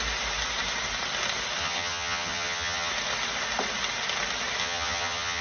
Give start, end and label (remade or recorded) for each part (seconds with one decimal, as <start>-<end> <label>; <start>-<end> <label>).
0.0-1.6 recorded; 1.6-2.9 remade; 2.9-4.6 recorded; 4.6-5.4 remade